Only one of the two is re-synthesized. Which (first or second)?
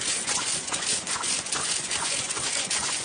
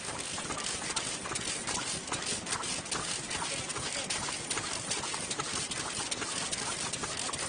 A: first